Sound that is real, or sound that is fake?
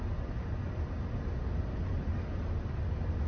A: real